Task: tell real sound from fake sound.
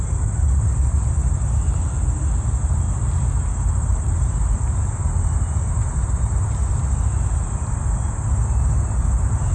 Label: real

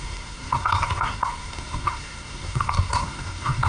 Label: fake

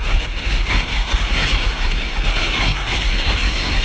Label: fake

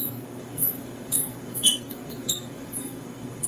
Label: fake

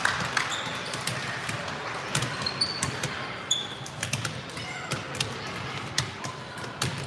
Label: real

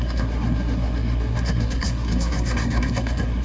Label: fake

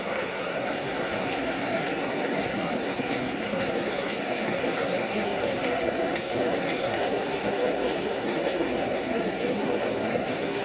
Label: fake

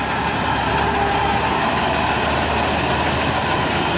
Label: real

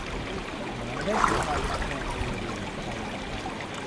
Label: real